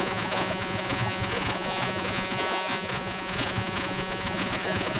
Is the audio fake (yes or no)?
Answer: yes